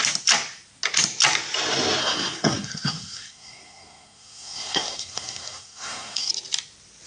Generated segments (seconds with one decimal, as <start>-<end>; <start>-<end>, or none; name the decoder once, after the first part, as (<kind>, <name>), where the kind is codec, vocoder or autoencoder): 2.0-6.3 (codec, SNAC)